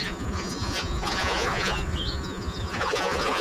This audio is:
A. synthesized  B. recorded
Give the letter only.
A